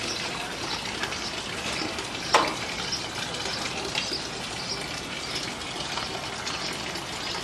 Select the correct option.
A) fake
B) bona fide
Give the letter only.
B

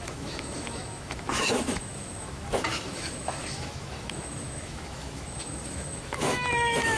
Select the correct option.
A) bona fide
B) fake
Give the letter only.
B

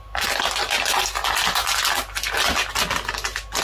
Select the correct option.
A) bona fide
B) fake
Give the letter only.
A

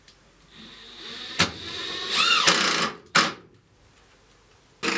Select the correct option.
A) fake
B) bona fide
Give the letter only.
B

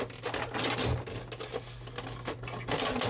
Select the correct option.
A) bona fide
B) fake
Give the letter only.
A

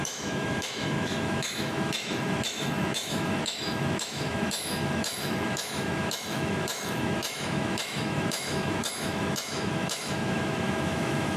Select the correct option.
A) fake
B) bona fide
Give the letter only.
A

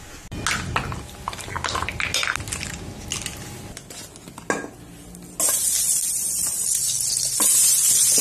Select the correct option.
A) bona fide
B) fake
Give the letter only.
A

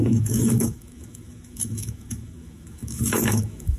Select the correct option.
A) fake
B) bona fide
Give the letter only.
A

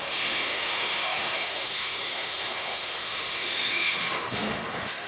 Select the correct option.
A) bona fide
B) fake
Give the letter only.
B